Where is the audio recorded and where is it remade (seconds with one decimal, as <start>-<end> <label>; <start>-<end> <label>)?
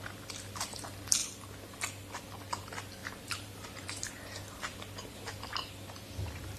0.0-3.0 recorded; 3.0-4.1 remade; 4.1-6.6 recorded